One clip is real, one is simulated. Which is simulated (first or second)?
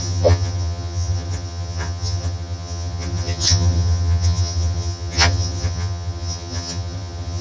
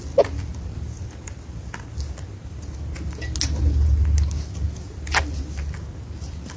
first